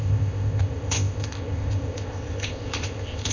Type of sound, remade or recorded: remade